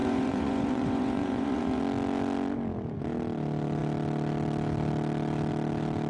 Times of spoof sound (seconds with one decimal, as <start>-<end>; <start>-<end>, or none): 0.0-1.8